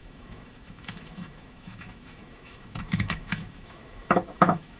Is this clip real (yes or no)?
no